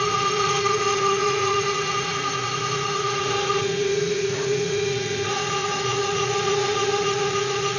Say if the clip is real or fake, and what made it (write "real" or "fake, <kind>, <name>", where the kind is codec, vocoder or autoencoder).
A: fake, vocoder, Vocos